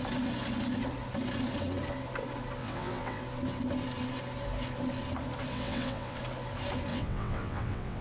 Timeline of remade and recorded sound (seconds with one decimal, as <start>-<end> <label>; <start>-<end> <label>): 0.0-2.6 recorded; 2.6-3.2 remade; 3.2-5.5 recorded; 5.5-6.2 remade; 6.2-6.9 recorded; 6.9-8.0 remade